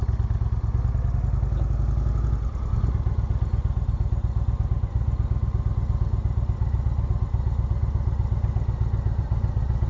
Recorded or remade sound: recorded